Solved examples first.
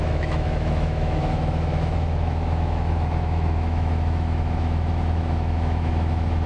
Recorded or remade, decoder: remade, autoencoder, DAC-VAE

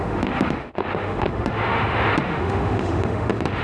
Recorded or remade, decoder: remade, autoencoder, DAC-VAE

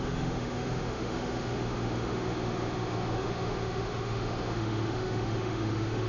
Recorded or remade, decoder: remade, autoencoder, DAC-VAE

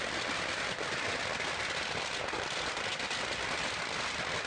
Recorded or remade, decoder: recorded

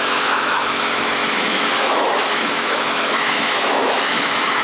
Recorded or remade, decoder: remade, autoencoder, DAC-VAE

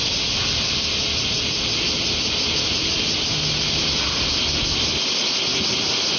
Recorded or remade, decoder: recorded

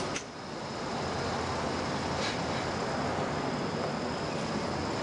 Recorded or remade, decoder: recorded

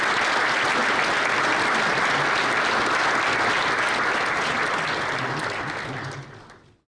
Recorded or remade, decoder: recorded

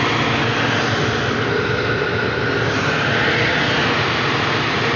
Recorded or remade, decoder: recorded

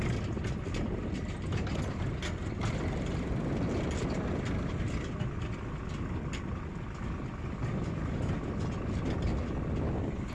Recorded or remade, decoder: recorded